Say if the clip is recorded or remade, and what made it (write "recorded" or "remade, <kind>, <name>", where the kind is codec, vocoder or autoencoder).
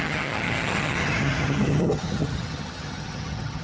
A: remade, vocoder, HiFi-GAN